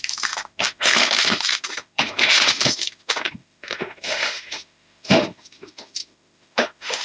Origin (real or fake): fake